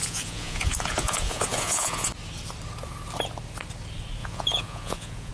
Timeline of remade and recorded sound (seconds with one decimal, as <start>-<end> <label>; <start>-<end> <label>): 0.0-2.1 remade; 2.1-4.2 recorded; 4.2-5.3 remade

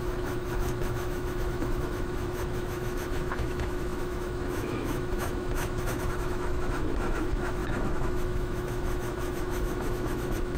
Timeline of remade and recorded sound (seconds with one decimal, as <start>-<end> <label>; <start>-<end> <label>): 0.0-10.6 remade

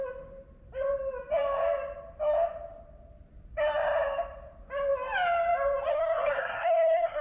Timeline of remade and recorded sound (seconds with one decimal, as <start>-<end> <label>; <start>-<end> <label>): 0.0-5.9 recorded; 5.9-7.2 remade

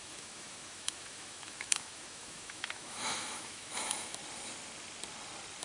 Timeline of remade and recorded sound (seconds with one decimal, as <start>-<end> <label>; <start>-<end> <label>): 0.0-4.2 remade; 4.2-5.6 recorded

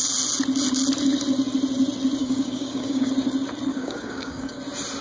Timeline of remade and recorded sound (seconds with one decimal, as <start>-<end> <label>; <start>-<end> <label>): 0.0-2.2 recorded; 2.2-3.1 remade; 3.1-3.7 recorded; 3.7-4.6 remade; 4.6-5.0 recorded